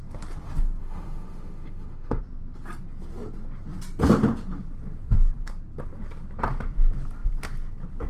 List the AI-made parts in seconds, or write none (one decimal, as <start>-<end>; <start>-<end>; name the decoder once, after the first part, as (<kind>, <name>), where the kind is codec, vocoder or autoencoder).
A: 0.8-2.2 (autoencoder, DAC-VAE)